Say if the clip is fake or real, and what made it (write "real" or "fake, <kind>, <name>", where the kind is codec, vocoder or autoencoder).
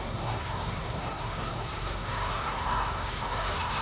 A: fake, codec, SNAC